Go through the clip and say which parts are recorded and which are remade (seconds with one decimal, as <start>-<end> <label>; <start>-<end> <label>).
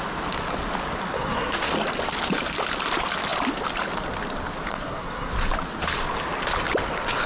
0.0-1.1 recorded; 1.1-1.7 remade; 1.7-4.7 recorded; 4.7-5.3 remade; 5.3-7.3 recorded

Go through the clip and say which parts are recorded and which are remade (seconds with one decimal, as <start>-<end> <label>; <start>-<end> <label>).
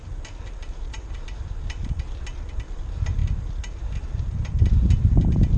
0.0-5.6 recorded